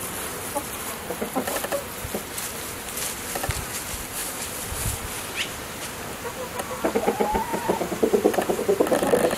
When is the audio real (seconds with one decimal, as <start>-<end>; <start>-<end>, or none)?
0.0-4.2; 6.1-9.4